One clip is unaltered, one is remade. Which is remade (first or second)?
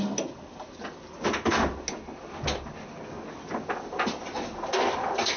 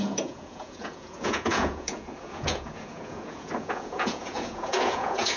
second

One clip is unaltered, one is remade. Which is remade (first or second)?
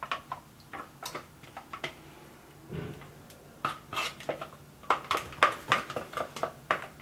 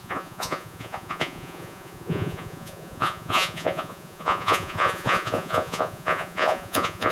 second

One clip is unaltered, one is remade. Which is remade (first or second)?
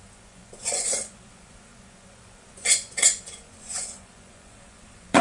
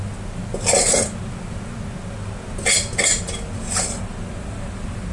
first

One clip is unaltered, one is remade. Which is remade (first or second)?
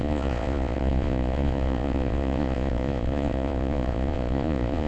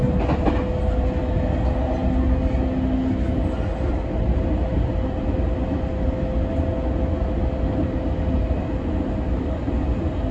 first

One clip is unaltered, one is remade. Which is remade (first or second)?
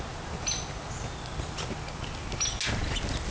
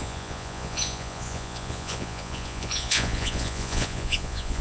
second